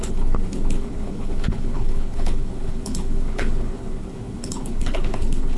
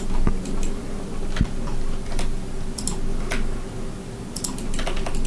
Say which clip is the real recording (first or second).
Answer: second